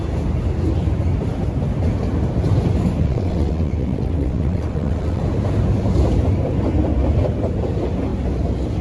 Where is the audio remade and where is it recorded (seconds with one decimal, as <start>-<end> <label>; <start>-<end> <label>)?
0.0-3.0 recorded; 3.0-5.2 remade; 5.2-8.8 recorded